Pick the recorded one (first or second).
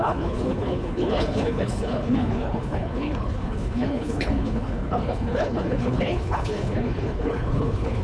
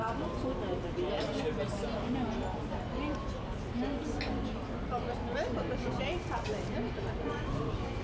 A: second